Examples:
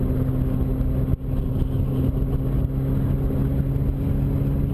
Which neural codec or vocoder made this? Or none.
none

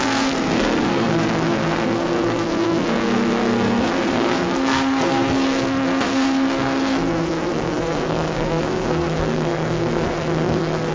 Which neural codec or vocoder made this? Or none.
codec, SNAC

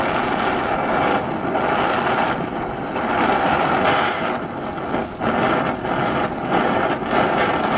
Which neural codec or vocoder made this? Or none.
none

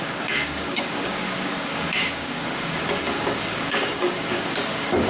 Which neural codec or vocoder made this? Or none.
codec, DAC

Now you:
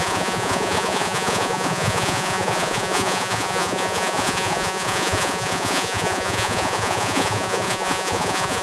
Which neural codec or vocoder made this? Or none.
vocoder, Vocos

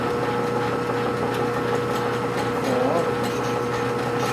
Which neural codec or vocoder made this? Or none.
none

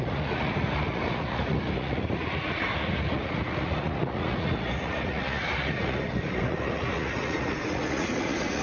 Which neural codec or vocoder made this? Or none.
vocoder, Vocos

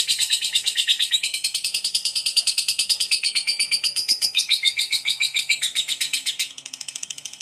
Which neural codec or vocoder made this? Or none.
codec, SNAC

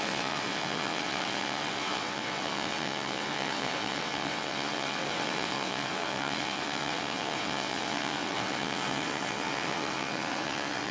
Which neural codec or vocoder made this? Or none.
vocoder, WaveNeXt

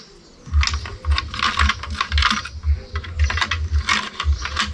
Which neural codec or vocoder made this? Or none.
none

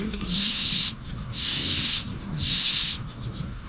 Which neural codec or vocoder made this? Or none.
codec, SNAC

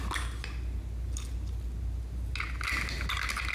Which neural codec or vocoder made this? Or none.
none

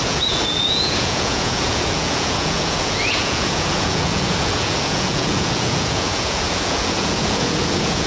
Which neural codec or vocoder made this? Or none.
vocoder, Vocos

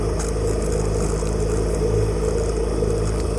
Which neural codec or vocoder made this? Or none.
none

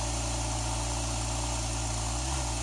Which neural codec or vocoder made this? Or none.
none